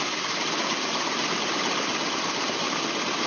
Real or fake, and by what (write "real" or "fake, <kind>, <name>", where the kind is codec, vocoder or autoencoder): real